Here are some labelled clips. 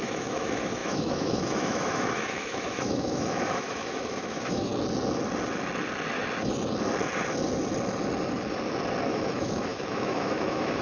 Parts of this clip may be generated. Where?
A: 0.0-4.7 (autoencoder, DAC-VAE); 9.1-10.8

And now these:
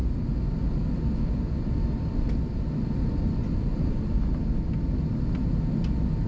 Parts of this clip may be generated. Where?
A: none

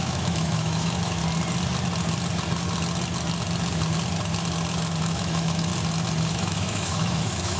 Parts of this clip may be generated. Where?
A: 0.0-1.2 (autoencoder, DAC-VAE); 5.0-5.7; 6.3-7.6

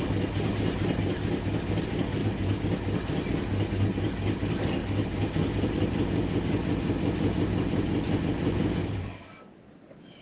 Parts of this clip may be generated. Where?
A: none

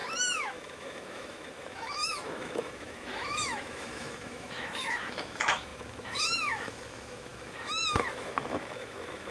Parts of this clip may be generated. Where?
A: 0.0-9.3 (autoencoder, DAC-VAE)

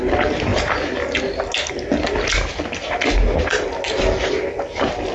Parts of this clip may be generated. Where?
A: none

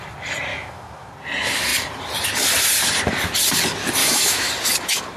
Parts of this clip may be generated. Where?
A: 0.5-1.1 (autoencoder, DAC-VAE); 4.0-4.5

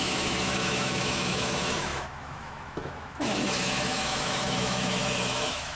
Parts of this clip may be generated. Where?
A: 0.0-5.8 (autoencoder, DAC-VAE)